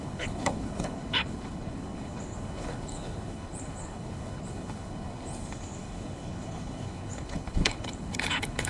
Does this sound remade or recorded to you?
remade